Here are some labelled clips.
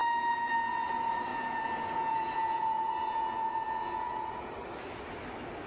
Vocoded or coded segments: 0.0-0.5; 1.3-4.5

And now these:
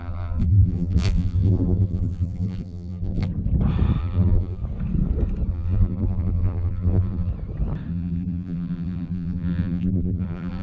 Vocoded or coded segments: 0.0-3.3; 4.0-4.6; 5.5-7.3; 7.9-10.6

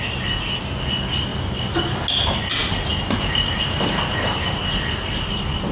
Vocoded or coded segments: none

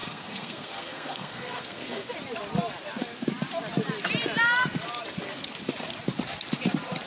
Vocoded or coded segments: 0.0-2.1

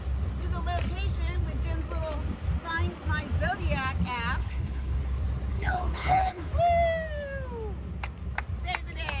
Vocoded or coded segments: 4.4-5.0; 5.5-6.5

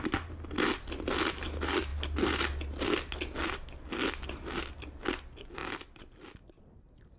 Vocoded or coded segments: none

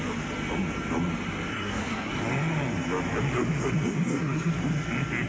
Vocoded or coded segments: 1.5-2.1; 3.9-4.5